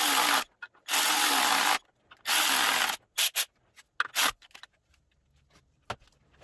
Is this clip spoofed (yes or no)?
no